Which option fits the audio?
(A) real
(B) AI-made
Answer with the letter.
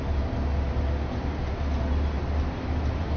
A